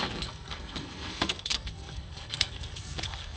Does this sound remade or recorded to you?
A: remade